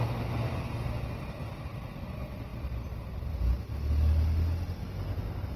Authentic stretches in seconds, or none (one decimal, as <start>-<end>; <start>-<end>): 0.0-1.4; 2.0-2.5; 3.1-5.6